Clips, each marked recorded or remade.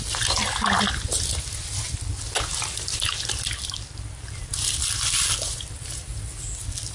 recorded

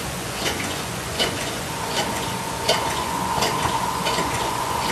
remade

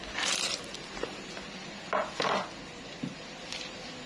recorded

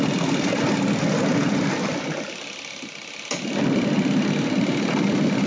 recorded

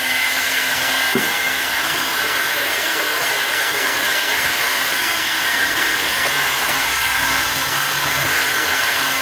remade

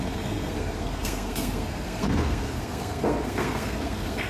remade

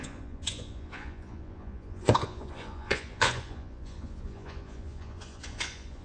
remade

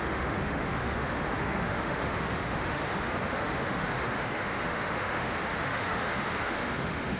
remade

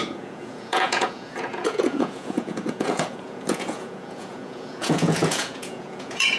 remade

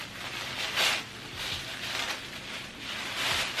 recorded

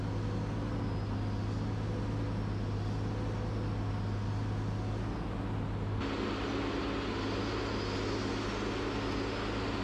recorded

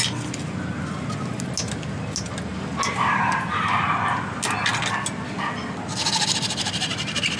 recorded